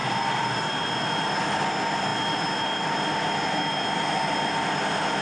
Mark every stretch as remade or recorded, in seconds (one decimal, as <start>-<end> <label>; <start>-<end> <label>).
0.0-0.6 remade; 0.6-5.2 recorded